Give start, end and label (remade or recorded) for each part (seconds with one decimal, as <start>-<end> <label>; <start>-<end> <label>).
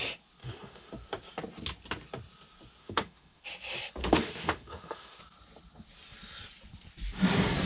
0.0-0.4 recorded; 0.4-0.9 remade; 0.9-2.8 recorded; 2.8-3.4 remade; 3.4-4.0 recorded; 4.0-5.2 remade; 5.2-7.7 recorded